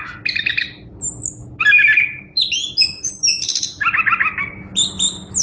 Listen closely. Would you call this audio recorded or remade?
recorded